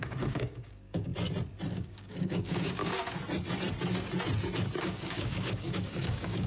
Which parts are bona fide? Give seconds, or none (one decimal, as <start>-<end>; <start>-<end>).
1.1-1.7; 2.8-4.8